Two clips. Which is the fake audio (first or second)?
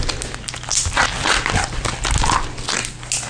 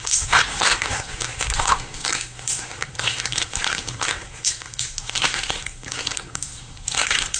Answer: second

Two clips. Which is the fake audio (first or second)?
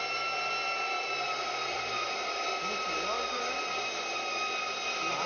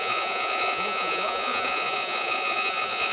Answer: second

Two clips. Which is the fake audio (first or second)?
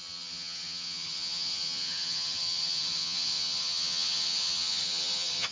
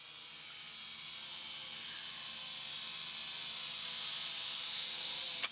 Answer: first